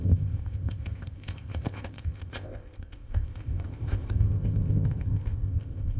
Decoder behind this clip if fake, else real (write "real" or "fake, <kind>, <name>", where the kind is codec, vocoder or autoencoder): fake, codec, ZipCodec